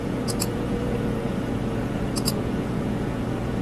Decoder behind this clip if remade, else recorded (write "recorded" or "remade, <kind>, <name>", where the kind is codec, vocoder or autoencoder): remade, vocoder, Vocos